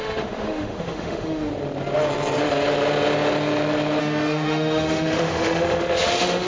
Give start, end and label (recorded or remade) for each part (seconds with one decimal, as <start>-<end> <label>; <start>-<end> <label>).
0.0-1.5 remade; 1.5-4.0 recorded; 4.0-6.5 remade